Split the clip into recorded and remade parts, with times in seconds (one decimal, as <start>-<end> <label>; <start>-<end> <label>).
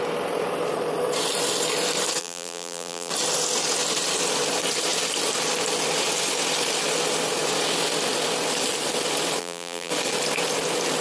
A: 0.0-2.2 recorded; 2.2-3.1 remade; 3.1-9.4 recorded; 9.4-9.9 remade; 9.9-11.0 recorded